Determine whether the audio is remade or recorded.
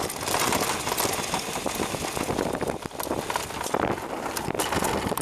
recorded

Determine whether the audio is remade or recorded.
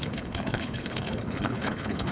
remade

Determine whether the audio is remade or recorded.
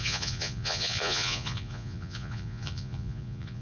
remade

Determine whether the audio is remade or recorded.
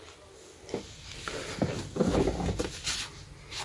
recorded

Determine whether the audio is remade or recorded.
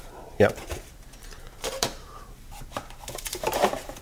remade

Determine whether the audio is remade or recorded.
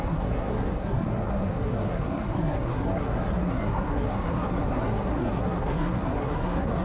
remade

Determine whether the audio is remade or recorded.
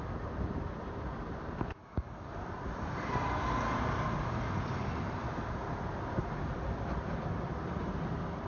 recorded